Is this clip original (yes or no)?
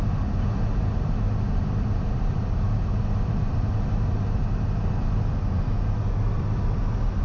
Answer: yes